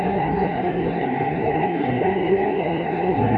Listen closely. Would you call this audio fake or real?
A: fake